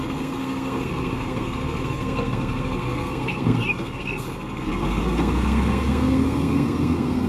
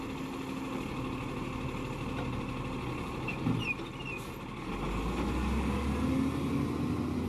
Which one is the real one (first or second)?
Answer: second